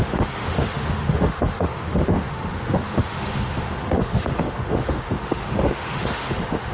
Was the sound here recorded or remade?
remade